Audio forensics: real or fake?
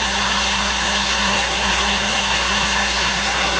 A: fake